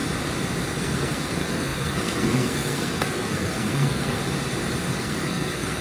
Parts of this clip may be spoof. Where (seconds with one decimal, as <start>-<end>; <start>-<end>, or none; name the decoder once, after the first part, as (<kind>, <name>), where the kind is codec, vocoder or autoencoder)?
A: 0.8-4.2 (codec, SNAC); 5.0-5.8